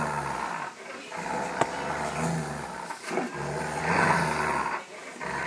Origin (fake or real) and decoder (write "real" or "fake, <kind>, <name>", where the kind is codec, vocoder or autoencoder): real